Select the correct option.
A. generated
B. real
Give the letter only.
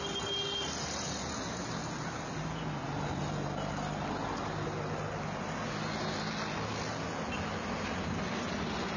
B